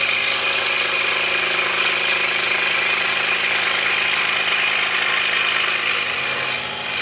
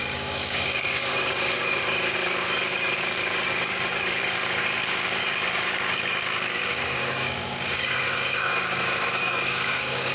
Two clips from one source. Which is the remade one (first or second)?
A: second